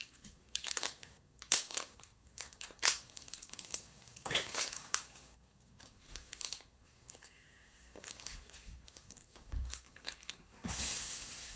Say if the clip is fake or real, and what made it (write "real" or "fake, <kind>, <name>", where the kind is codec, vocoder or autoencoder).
fake, codec, SNAC